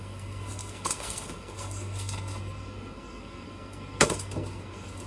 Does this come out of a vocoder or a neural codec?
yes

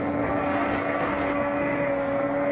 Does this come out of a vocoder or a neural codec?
yes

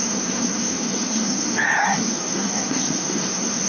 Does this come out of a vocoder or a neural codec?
yes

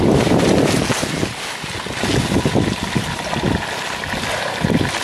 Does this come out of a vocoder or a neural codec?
no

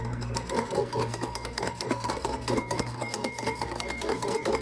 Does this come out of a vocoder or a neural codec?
yes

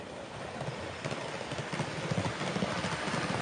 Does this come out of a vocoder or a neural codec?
no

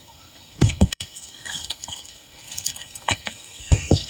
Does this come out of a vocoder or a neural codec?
yes